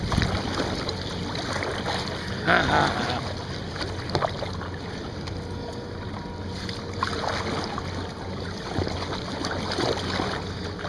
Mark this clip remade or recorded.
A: recorded